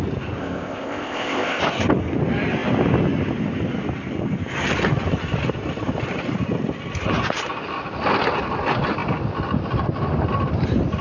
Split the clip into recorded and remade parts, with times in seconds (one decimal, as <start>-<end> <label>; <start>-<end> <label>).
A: 0.0-0.4 recorded; 0.4-1.6 remade; 1.6-11.0 recorded